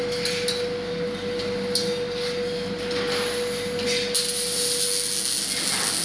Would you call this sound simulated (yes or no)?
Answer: no